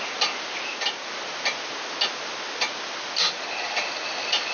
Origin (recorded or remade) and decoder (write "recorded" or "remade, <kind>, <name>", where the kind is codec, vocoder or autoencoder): recorded